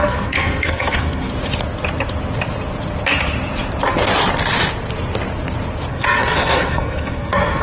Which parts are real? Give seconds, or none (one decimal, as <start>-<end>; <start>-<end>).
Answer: 1.3-5.9